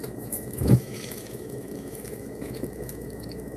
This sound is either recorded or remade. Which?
remade